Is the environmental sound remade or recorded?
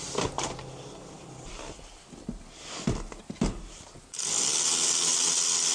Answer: recorded